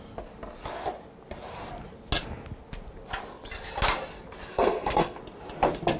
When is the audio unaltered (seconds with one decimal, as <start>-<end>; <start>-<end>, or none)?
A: 0.0-4.5; 5.2-6.0